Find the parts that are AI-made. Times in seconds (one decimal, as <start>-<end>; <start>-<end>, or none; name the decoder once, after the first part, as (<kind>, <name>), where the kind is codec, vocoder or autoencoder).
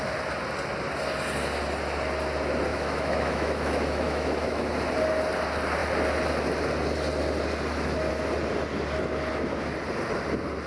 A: 2.7-4.7 (autoencoder, DAC-VAE)